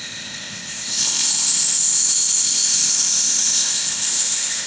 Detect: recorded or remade remade